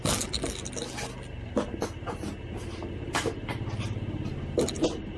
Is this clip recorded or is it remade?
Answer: recorded